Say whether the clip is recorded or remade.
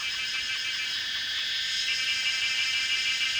remade